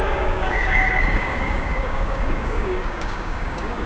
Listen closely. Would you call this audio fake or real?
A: fake